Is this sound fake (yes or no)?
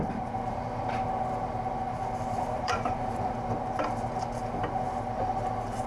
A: yes